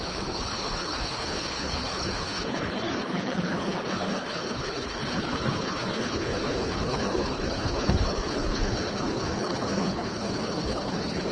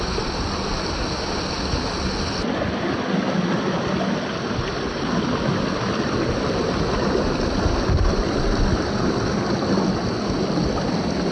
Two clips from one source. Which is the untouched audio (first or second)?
second